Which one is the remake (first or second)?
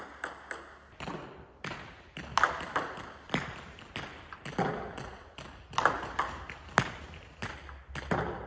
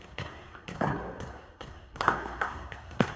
second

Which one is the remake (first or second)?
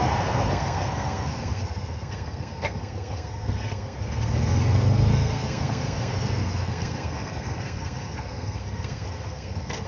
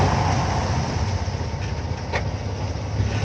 first